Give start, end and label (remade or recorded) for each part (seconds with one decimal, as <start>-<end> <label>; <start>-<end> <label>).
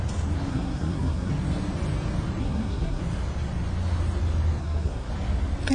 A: 0.0-0.5 recorded; 0.5-1.3 remade; 1.3-2.4 recorded; 2.4-3.0 remade; 3.0-4.6 recorded; 4.6-5.1 remade; 5.1-5.7 recorded